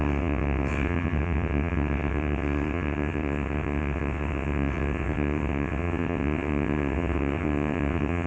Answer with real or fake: fake